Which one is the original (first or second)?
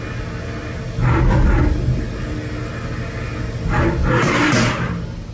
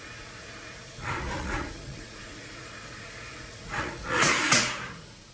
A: first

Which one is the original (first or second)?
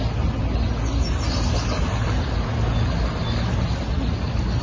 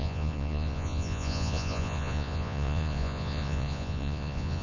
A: first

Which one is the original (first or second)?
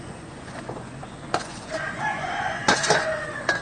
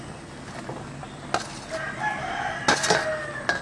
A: second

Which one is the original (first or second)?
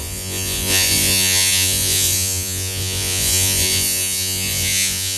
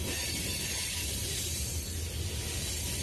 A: second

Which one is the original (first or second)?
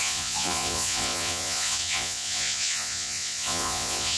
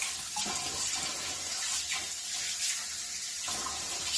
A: second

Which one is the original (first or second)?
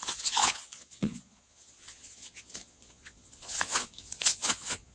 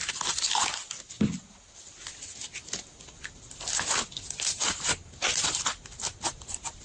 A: second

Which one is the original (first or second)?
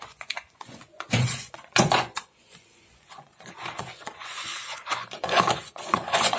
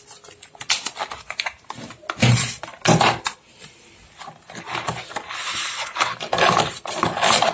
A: second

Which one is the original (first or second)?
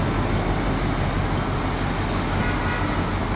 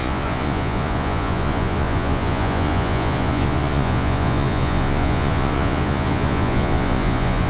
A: first